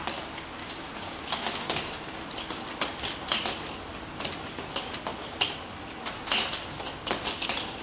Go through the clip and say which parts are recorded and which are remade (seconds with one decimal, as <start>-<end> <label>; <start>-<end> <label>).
0.0-0.6 recorded; 0.6-2.2 remade; 2.2-7.8 recorded